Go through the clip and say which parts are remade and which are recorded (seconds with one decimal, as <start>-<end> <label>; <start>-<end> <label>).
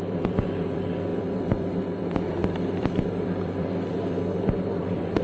0.0-5.2 remade